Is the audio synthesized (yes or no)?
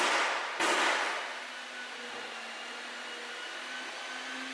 no